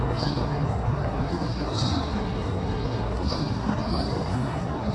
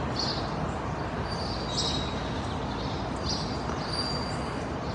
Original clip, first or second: second